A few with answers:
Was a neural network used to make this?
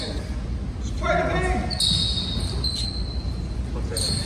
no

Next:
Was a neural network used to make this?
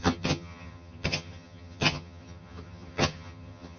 yes